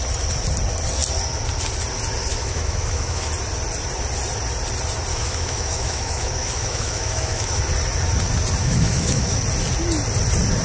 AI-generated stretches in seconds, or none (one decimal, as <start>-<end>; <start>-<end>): 2.3-3.3; 5.1-7.6; 8.6-9.4